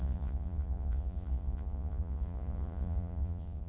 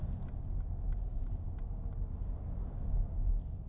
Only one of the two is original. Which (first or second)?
second